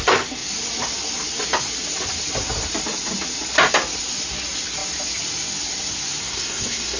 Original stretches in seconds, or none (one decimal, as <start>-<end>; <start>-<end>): 0.0-6.2